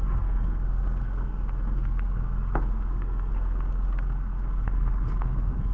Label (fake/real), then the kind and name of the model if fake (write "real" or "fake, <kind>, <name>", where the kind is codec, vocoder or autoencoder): fake, codec, SNAC